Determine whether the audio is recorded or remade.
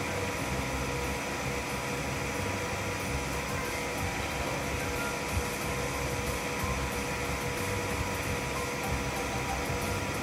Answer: recorded